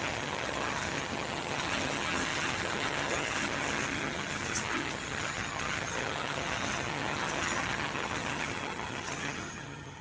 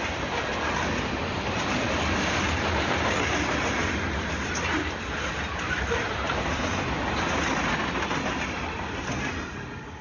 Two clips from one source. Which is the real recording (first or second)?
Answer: second